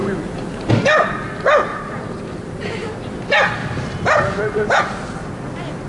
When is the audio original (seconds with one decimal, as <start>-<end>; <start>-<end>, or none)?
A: 0.7-1.7; 2.6-3.6; 4.8-5.9